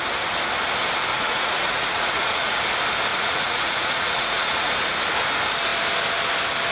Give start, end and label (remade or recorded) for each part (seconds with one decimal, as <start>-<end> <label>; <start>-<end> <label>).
0.0-1.1 recorded; 1.1-2.6 remade; 2.6-3.1 recorded; 3.1-4.7 remade; 4.7-6.7 recorded